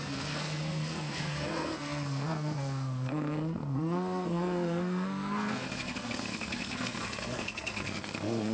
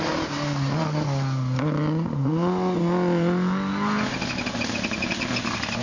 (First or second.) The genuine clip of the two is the second